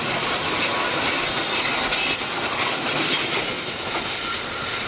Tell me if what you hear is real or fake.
real